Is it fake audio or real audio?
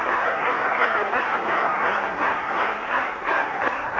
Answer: fake